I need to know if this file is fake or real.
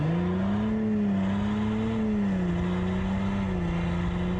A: real